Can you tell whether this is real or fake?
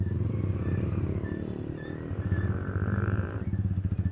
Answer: fake